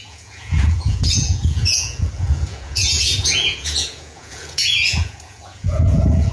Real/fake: fake